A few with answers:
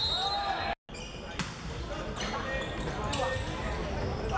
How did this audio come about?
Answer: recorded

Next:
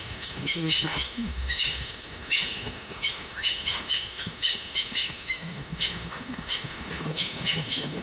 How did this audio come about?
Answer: remade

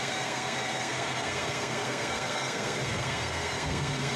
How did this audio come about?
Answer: remade